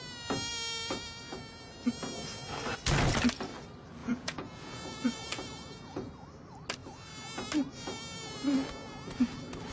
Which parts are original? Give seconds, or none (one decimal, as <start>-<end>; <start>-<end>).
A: 0.0-4.0; 6.1-9.7

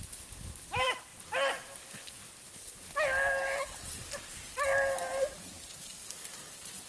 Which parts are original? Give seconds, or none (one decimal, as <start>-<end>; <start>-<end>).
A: 0.0-6.9

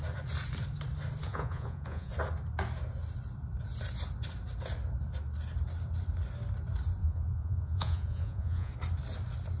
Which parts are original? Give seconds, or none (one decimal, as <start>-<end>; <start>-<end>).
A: 0.0-1.2; 2.1-7.0; 8.7-9.6